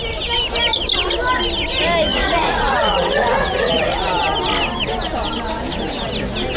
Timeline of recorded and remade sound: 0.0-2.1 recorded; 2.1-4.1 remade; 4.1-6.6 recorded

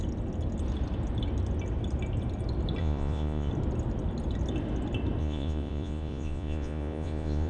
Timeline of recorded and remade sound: 0.0-2.8 recorded; 2.8-3.5 remade; 3.5-5.2 recorded; 5.2-7.5 remade

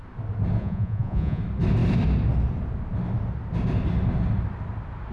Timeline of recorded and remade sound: 0.0-0.6 recorded; 0.6-1.4 remade; 1.4-5.1 recorded

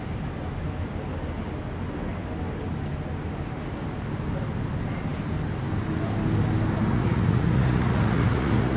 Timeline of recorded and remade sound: 0.0-6.9 recorded; 6.9-8.8 remade

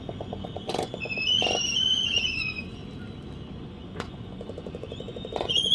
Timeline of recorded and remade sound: 0.0-2.8 remade; 2.8-3.6 recorded; 3.6-5.7 remade

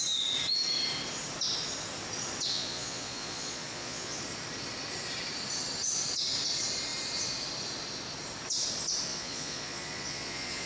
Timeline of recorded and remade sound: 0.0-2.5 recorded; 2.5-4.2 remade; 4.2-9.1 recorded; 9.1-10.7 remade

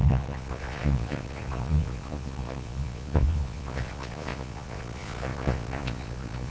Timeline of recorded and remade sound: 0.0-6.5 remade

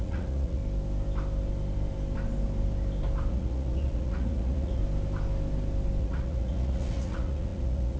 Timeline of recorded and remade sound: 0.0-0.6 remade; 0.6-3.3 recorded; 3.3-4.8 remade; 4.8-6.0 recorded; 6.0-8.0 remade